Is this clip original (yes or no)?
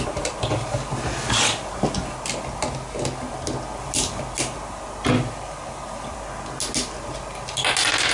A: yes